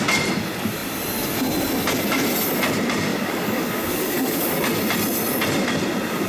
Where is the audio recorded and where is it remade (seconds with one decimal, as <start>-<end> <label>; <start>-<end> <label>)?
0.0-3.1 recorded; 3.1-4.5 remade; 4.5-6.3 recorded